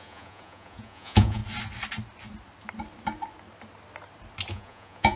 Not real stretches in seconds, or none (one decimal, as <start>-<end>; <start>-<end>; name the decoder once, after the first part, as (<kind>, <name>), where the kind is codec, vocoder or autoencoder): 0.0-1.4 (vocoder, Vocos); 4.5-5.2